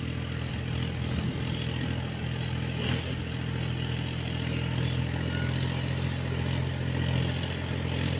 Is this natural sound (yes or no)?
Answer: yes